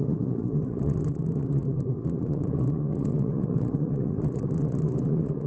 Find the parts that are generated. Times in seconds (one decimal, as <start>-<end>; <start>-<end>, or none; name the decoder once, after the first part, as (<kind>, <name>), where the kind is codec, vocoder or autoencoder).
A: 0.0-5.5 (vocoder, Vocos)